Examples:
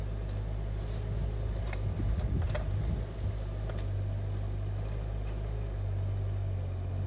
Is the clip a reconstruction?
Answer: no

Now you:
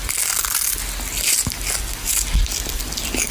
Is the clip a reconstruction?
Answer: no